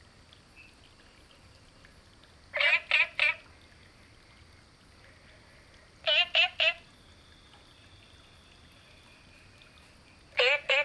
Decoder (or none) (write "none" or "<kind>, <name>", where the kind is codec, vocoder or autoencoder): none